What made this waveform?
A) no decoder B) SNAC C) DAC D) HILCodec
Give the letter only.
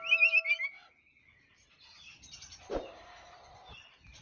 A